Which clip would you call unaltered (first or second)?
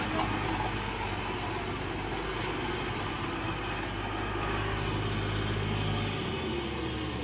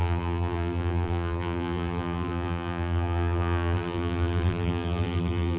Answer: first